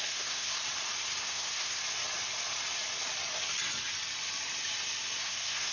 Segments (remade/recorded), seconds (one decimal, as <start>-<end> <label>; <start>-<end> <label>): 0.0-0.6 remade; 0.6-1.2 recorded; 1.2-1.8 remade; 1.8-5.2 recorded; 5.2-5.7 remade